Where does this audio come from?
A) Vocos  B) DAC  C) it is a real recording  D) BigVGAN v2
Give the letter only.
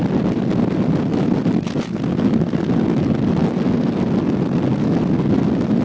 C